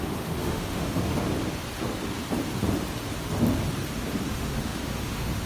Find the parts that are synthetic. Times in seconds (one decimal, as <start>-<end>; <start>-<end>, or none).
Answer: 0.0-1.3; 4.3-5.5